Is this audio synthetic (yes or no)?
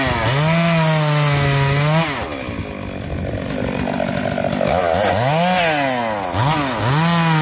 no